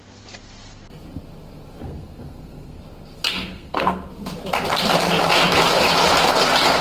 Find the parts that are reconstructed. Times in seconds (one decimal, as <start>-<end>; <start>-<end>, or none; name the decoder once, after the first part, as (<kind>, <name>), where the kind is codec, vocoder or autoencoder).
1.8-2.8 (codec, SNAC); 3.3-4.1